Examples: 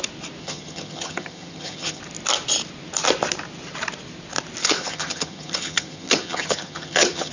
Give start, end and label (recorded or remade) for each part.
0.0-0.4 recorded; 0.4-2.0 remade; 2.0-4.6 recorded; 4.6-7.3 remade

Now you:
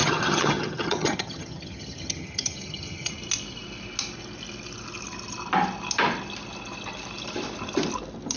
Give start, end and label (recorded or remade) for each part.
0.0-3.1 remade; 3.1-8.4 recorded

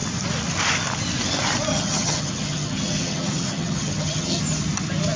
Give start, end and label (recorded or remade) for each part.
0.0-1.7 recorded; 1.7-4.4 remade; 4.4-5.2 recorded